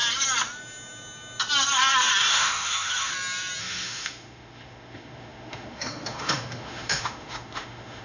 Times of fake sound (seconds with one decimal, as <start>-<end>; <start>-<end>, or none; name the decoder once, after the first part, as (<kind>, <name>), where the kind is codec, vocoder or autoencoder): 2.3-3.1 (autoencoder, DAC-VAE); 3.6-8.0